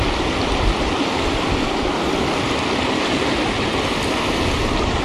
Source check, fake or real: real